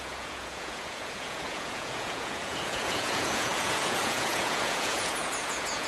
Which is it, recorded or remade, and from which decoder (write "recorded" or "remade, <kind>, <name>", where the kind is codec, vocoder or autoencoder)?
remade, vocoder, Vocos